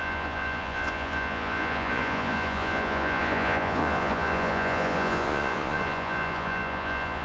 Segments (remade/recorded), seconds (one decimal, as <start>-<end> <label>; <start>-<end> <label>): 0.0-7.2 remade

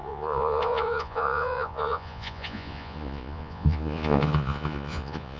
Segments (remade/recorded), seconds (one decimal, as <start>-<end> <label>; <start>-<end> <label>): 0.0-5.4 remade

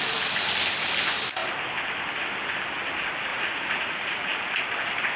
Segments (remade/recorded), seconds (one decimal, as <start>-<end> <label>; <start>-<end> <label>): 0.0-3.3 recorded; 3.3-4.5 remade; 4.5-5.2 recorded

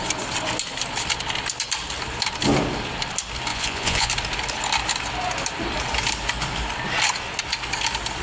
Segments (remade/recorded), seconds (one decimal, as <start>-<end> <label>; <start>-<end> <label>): 0.0-3.5 recorded; 3.5-4.1 remade; 4.1-8.2 recorded

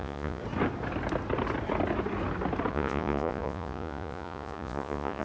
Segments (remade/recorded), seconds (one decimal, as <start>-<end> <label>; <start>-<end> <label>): 0.0-0.4 remade; 0.4-2.7 recorded; 2.7-5.2 remade

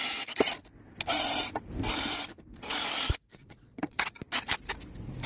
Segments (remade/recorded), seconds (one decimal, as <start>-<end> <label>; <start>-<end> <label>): 0.0-3.3 recorded; 3.3-4.2 remade; 4.2-5.3 recorded

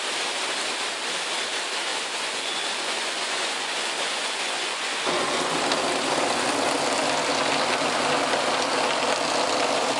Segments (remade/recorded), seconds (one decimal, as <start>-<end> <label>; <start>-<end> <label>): 0.0-1.9 recorded; 1.9-5.6 remade; 5.6-10.0 recorded

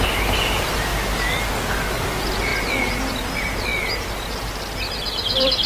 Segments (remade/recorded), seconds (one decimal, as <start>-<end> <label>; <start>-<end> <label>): 0.0-5.7 recorded